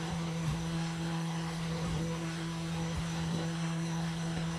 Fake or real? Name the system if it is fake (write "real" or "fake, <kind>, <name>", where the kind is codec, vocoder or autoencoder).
fake, codec, SNAC